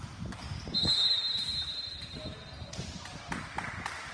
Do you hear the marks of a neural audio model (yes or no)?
no